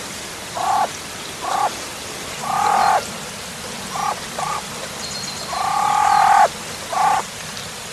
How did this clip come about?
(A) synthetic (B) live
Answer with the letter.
B